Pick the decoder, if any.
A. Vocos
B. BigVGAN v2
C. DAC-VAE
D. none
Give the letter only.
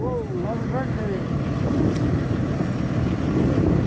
D